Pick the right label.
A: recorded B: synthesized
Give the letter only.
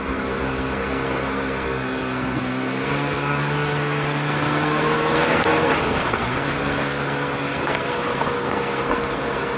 B